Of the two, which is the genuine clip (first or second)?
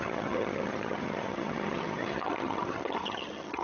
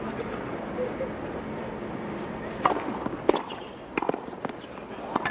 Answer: second